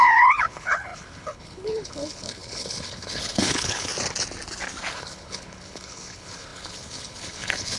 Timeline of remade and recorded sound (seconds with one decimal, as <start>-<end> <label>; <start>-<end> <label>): 0.0-3.9 remade; 3.9-4.9 recorded; 4.9-7.8 remade